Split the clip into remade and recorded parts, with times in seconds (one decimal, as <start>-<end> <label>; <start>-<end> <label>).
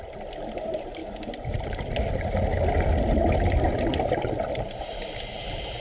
0.0-5.8 recorded